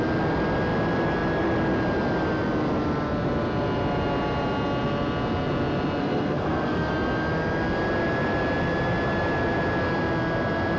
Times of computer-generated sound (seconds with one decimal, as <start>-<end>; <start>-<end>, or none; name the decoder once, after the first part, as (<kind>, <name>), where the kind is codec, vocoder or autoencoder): 6.0-6.9 (codec, SNAC)

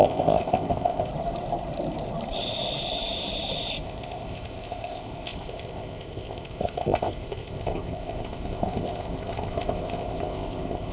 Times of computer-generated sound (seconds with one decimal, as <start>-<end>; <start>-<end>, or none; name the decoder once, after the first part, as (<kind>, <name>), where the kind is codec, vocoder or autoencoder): 0.0-1.1 (codec, ZipCodec); 3.8-10.9

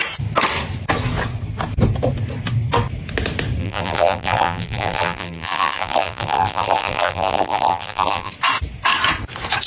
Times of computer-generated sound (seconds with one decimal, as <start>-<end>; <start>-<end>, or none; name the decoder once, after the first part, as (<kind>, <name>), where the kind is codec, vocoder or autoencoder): 3.6-8.3 (vocoder, BigVGAN v2)